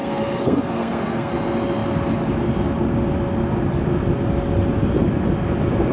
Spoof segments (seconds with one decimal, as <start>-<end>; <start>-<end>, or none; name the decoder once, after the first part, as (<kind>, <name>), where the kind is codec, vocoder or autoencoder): 0.0-1.3 (codec, SNAC)